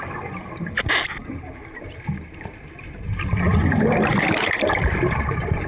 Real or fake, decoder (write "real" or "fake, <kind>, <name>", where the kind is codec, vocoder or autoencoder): fake, vocoder, BigVGAN v2